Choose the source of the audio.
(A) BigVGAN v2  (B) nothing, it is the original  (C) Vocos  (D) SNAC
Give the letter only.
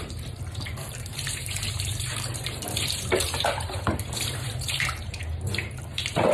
A